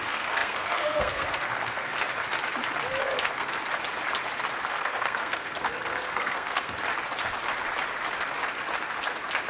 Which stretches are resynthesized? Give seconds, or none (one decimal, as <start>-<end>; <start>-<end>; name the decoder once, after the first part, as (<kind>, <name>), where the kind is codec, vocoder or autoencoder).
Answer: 0.0-1.9 (codec, SNAC); 3.0-3.6; 4.7-6.8